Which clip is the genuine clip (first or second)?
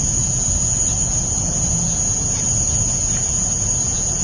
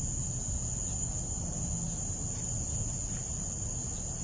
second